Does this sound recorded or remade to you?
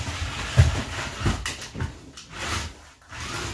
recorded